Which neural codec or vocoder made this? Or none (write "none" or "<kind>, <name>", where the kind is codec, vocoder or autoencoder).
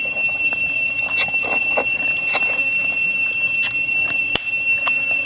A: none